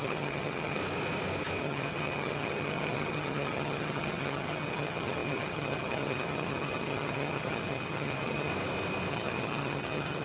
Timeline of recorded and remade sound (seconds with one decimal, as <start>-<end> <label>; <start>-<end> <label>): 0.0-0.8 remade; 0.8-1.6 recorded; 1.6-8.5 remade; 8.5-9.1 recorded; 9.1-10.2 remade